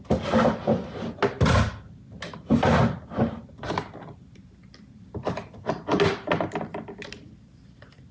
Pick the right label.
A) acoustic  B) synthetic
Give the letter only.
A